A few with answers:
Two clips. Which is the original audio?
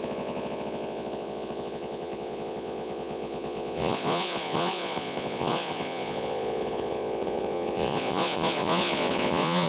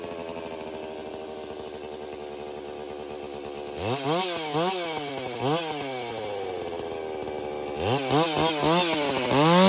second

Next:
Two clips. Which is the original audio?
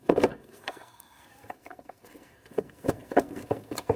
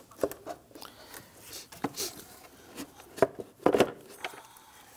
second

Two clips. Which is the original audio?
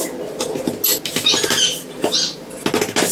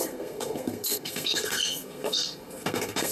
first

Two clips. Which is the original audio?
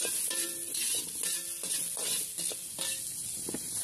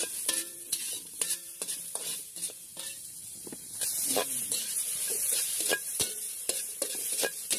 first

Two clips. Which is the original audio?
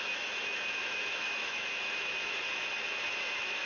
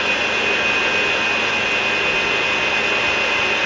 second